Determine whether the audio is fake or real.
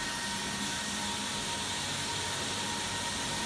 real